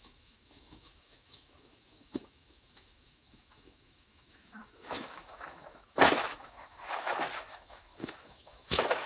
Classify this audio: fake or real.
fake